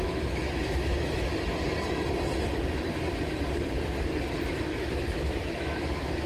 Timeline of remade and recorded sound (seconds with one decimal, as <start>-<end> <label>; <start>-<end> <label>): 0.0-1.3 remade; 1.3-4.5 recorded; 4.5-6.3 remade